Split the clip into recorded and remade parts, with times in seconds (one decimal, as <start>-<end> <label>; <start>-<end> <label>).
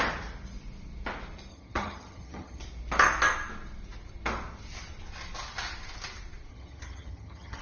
0.0-1.5 recorded; 1.5-2.6 remade; 2.6-6.5 recorded; 6.5-7.6 remade